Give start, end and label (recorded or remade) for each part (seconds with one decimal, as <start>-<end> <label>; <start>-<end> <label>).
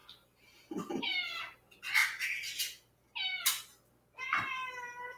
0.0-5.2 recorded